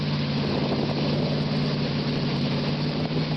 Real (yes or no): yes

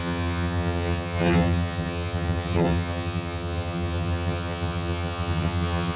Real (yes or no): no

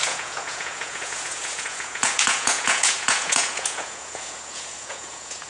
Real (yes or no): no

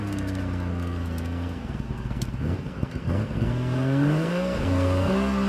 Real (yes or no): no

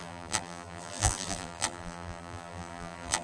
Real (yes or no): no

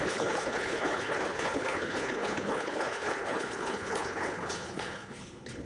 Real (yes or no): no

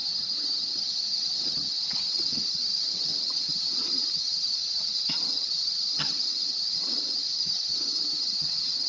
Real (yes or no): no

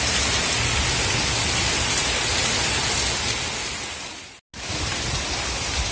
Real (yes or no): yes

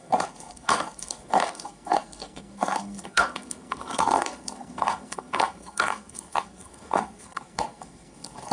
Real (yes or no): no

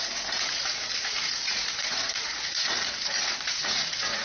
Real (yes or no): no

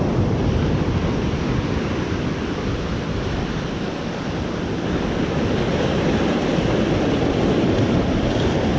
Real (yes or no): yes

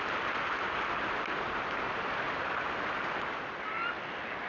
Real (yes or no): yes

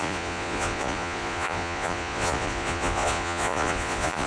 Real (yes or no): no